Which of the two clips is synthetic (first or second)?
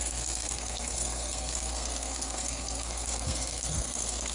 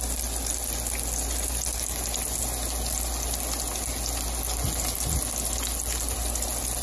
first